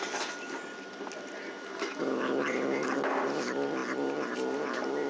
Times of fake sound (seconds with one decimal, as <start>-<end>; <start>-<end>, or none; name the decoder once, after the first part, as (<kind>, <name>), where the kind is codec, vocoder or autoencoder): none